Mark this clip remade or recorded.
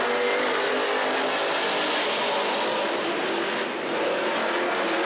recorded